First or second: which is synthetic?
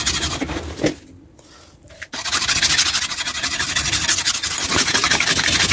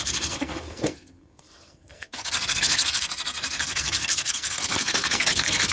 second